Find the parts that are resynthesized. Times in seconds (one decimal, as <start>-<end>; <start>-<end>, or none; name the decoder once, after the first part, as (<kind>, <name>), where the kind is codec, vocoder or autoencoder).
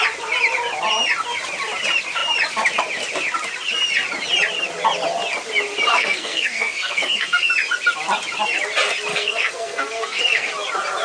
5.9-7.5 (codec, SNAC); 9.1-10.5